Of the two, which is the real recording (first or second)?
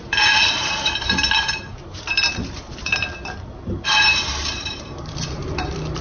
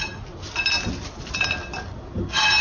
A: second